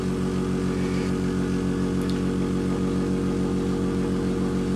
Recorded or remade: recorded